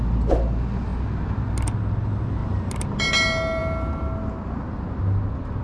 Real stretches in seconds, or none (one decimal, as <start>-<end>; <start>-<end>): 0.0-5.6